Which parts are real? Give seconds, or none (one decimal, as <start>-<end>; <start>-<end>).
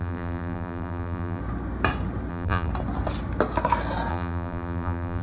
1.4-2.3; 2.7-4.1